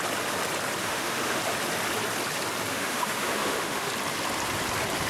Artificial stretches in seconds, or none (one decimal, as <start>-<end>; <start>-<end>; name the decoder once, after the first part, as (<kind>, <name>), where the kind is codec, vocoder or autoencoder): 0.8-1.4 (autoencoder, DAC-VAE); 2.7-3.9